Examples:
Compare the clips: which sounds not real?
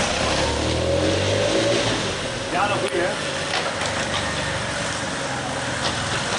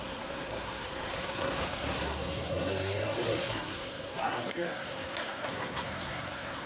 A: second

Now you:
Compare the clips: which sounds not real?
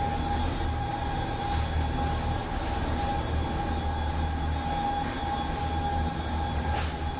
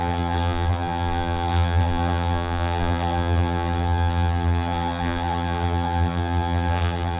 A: second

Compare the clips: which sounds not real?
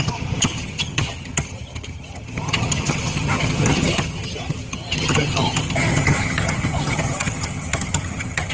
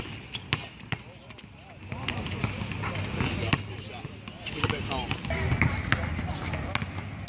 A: first